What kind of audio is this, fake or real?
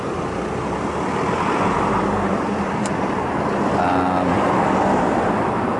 real